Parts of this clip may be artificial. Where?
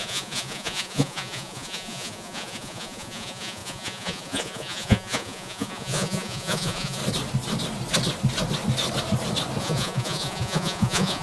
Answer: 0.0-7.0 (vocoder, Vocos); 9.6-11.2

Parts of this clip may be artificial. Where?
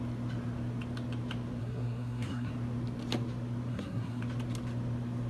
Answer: 1.6-2.5 (codec, SNAC); 3.7-4.2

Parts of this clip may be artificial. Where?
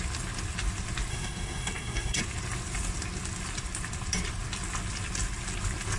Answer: 1.1-2.2 (codec, SNAC)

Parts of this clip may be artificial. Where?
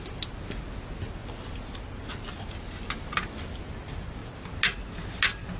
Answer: none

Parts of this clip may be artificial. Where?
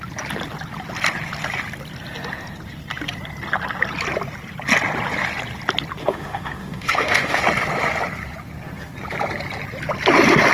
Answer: 6.0-7.4 (autoencoder, DAC-VAE)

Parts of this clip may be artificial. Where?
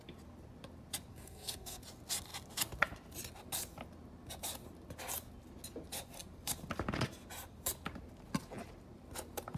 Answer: 1.1-1.8 (codec, SNAC)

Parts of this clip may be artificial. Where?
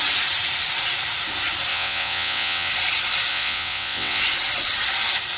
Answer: 1.7-2.7 (vocoder, WaveNeXt); 3.3-4.2